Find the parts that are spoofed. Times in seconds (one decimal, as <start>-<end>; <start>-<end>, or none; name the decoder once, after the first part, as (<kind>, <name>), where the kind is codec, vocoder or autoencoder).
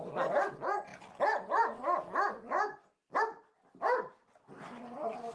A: none